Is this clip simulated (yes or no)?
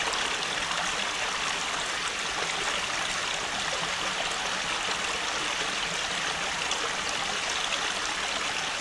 no